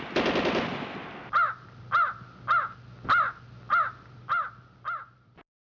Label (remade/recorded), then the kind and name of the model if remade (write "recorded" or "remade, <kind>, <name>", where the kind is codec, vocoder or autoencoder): recorded